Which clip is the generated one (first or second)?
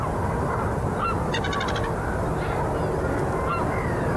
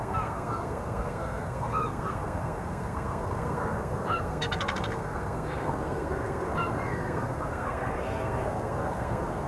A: second